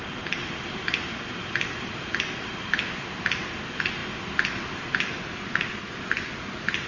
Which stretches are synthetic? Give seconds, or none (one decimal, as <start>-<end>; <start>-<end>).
none